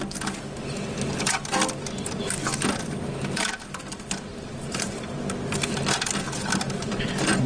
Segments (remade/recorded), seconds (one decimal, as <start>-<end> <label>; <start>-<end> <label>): 0.0-4.3 recorded; 4.3-5.0 remade; 5.0-7.5 recorded